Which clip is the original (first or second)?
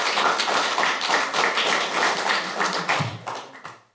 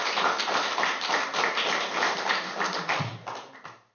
second